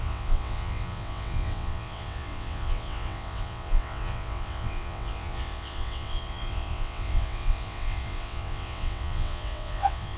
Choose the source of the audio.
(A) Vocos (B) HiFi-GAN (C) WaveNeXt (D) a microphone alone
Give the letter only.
C